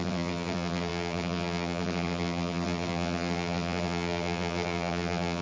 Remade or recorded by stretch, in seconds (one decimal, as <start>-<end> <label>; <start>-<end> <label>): 0.0-5.4 remade